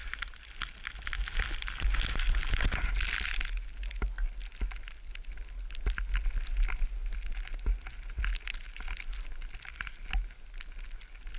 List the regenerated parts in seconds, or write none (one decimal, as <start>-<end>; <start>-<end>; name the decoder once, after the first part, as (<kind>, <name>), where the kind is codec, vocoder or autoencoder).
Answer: none